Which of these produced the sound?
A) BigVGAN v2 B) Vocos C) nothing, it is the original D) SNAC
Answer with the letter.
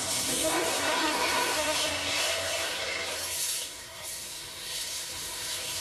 D